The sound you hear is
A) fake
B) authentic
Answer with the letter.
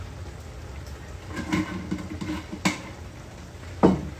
B